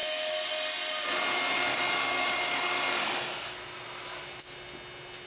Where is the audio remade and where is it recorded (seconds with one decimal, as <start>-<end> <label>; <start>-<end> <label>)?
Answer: 0.0-0.5 remade; 0.5-1.7 recorded; 1.7-3.3 remade; 3.3-5.3 recorded